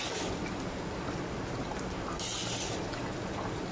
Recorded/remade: recorded